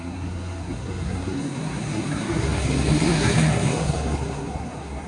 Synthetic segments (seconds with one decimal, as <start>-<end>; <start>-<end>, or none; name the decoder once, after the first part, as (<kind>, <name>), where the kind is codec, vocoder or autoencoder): 0.0-5.1 (codec, SNAC)